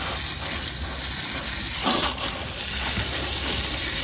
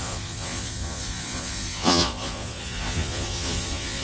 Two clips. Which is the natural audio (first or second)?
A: first